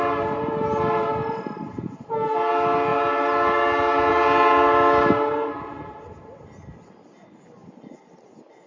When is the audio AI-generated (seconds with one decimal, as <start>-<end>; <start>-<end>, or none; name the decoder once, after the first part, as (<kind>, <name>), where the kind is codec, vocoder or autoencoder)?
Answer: none